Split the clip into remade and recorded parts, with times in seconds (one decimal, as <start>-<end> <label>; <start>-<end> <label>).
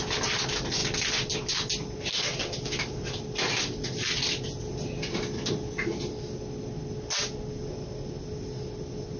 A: 0.0-9.2 recorded